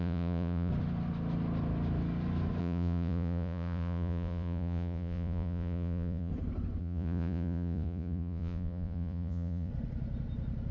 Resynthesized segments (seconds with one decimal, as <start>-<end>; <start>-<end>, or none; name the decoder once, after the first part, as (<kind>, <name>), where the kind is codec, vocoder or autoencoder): 0.0-0.7 (vocoder, Vocos); 2.6-6.3; 6.8-9.7